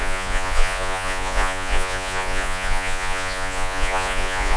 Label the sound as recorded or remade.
remade